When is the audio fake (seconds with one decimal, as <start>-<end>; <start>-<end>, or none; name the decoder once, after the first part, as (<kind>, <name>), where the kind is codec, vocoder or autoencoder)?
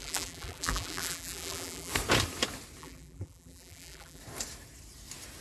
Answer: 0.0-1.9 (vocoder, BigVGAN v2); 2.8-4.2